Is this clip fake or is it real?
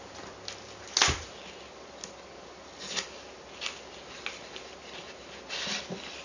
real